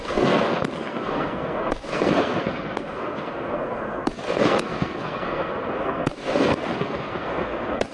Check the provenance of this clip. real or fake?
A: fake